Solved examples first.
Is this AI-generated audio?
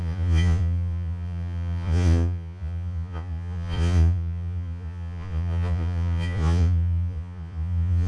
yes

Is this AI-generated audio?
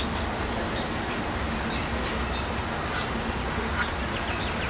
no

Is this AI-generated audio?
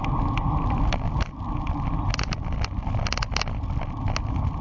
no